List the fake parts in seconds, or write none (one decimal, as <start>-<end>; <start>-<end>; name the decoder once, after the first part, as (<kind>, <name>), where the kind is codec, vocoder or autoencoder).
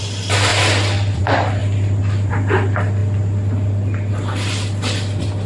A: none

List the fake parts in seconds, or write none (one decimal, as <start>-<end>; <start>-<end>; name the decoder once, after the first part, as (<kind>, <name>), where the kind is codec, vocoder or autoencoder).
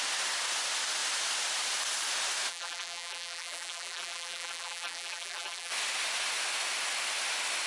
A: 2.5-5.7 (vocoder, BigVGAN v2)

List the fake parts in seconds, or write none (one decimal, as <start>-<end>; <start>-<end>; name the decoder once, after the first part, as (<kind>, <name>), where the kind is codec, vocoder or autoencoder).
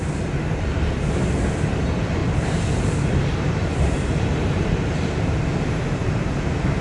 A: 2.2-5.4 (vocoder, BigVGAN v2); 6.0-6.8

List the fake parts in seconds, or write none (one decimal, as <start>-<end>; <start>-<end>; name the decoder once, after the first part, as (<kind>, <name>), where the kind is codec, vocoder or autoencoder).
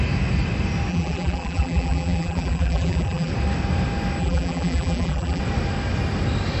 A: 0.9-3.3 (vocoder, BigVGAN v2); 4.2-5.4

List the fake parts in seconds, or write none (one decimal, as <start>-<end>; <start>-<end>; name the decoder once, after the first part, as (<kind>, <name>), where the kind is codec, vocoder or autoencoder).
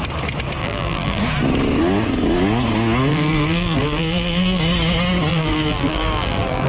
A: 0.6-1.2 (vocoder, BigVGAN v2); 3.1-4.6; 5.3-6.7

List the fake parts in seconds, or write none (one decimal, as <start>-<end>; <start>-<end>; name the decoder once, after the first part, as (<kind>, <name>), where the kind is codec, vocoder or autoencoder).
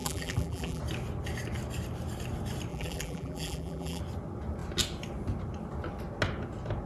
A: 0.0-0.8 (vocoder, BigVGAN v2); 2.7-4.0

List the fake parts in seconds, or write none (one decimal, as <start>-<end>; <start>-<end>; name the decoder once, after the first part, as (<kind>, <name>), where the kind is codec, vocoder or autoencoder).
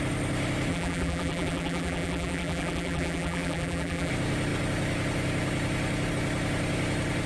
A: 0.7-4.1 (vocoder, BigVGAN v2)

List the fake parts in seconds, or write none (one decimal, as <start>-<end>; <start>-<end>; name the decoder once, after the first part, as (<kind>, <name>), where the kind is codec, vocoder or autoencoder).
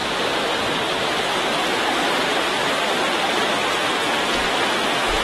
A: 0.0-3.1 (vocoder, BigVGAN v2)